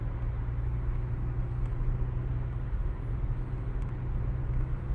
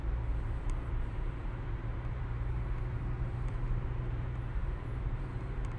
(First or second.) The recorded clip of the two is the first